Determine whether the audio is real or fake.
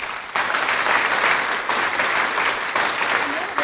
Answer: real